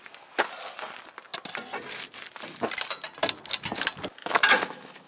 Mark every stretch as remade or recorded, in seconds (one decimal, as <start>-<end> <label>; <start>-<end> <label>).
0.0-4.2 recorded; 4.2-5.1 remade